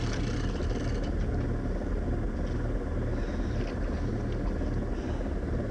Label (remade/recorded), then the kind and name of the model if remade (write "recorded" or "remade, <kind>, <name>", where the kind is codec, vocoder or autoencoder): recorded